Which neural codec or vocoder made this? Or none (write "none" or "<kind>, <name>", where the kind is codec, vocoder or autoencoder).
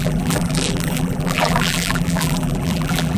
vocoder, BigVGAN v2